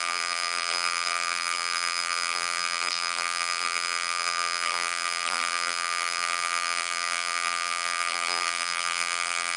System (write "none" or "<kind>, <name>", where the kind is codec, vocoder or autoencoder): vocoder, BigVGAN v2